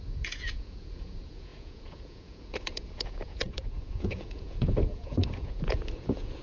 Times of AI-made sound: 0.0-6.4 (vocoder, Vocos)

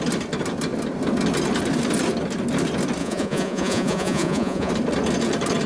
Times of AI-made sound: 3.0-4.7 (vocoder, Vocos)

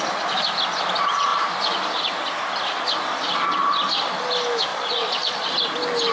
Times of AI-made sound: 4.7-5.5 (vocoder, Vocos)

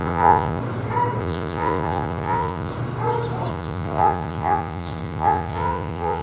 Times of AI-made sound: 0.0-0.6 (vocoder, Vocos); 1.2-2.7; 3.5-6.2

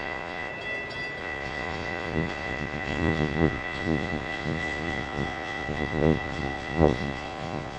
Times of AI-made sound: 0.0-0.5 (vocoder, Vocos); 1.2-7.8